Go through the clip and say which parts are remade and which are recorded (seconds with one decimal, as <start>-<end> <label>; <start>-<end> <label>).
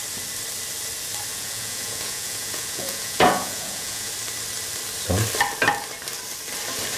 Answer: 0.0-1.3 recorded; 1.3-4.1 remade; 4.1-7.0 recorded